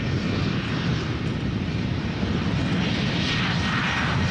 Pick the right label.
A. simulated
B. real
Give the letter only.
B